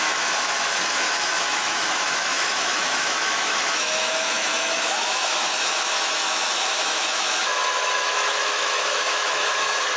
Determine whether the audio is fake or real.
fake